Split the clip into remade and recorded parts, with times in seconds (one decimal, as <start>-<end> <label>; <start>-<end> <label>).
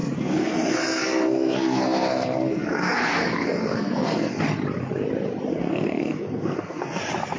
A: 0.0-4.4 remade; 4.4-5.5 recorded; 5.5-7.0 remade; 7.0-7.4 recorded